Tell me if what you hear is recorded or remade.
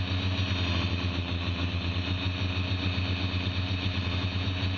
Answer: recorded